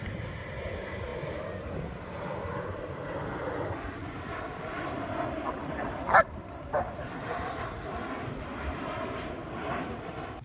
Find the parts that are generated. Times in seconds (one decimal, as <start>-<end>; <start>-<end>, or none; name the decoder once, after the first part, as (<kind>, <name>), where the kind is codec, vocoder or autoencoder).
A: none